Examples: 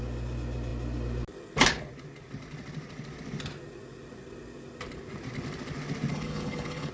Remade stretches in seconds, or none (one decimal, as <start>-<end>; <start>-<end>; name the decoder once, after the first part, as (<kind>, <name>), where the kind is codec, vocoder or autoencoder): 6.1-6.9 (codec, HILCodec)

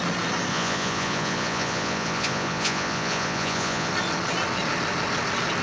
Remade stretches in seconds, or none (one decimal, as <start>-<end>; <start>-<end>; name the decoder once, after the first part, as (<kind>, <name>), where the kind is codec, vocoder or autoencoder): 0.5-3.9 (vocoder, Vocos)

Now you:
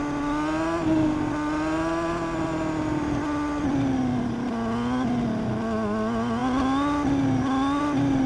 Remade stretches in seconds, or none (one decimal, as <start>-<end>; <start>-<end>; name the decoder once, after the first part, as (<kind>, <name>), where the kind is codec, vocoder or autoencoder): none